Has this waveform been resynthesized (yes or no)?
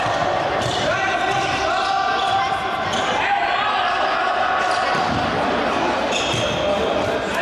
no